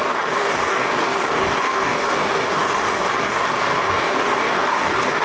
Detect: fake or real fake